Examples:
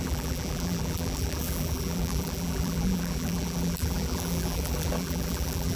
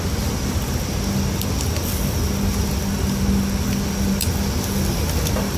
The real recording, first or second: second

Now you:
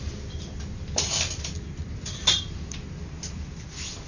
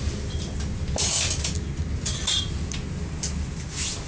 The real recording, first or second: second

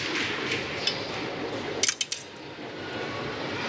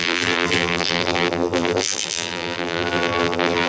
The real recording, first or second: first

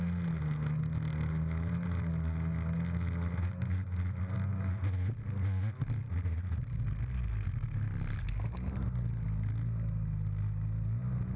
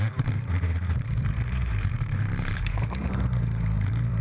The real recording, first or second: first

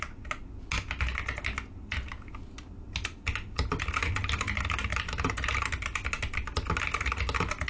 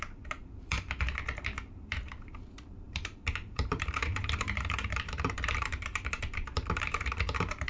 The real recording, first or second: first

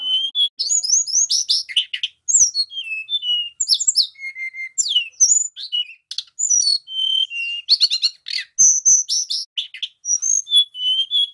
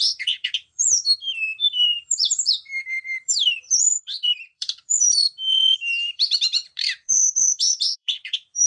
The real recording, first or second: first